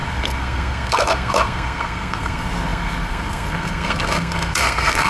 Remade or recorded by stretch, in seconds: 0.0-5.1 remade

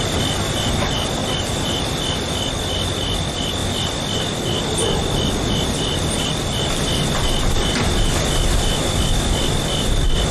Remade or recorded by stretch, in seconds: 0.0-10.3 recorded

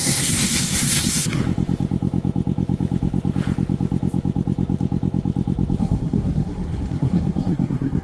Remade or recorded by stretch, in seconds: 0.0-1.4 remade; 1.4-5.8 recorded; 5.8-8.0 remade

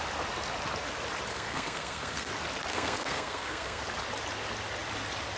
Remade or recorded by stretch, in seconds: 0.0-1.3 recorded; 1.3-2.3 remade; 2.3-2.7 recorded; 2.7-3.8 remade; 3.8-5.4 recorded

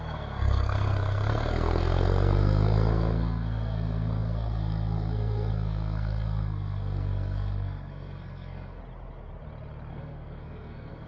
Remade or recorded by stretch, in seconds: 0.0-8.8 remade; 8.8-9.9 recorded; 9.9-11.1 remade

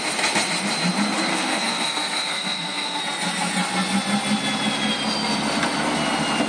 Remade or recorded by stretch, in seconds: 0.0-1.3 recorded; 1.3-3.0 remade; 3.0-6.5 recorded

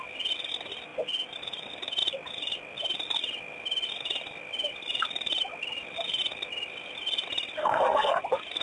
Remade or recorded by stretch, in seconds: 0.0-7.6 recorded; 7.6-8.2 remade; 8.2-8.6 recorded